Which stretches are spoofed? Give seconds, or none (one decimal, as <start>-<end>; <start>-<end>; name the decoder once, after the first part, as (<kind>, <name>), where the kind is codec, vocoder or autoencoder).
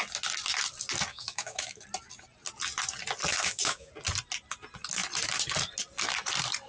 1.1-1.8 (autoencoder, DAC-VAE); 3.3-3.9